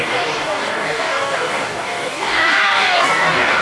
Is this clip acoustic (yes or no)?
no